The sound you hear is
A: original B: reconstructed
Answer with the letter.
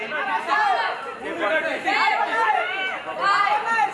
A